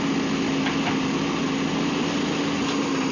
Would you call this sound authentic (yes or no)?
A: yes